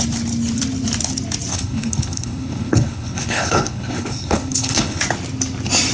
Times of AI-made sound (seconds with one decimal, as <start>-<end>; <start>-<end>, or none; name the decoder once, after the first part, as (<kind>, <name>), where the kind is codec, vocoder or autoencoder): 1.5-5.0 (codec, HILCodec)